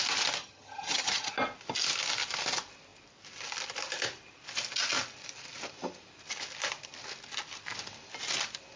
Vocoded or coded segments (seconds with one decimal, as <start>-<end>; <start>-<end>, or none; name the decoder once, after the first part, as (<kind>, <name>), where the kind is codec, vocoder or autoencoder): 0.4-1.3 (vocoder, HiFi-GAN)